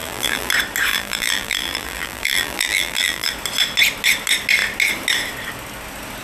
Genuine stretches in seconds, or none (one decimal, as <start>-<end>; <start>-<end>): 0.5-0.9; 3.3-6.2